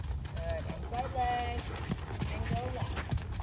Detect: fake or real real